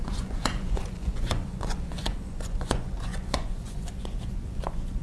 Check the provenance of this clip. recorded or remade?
remade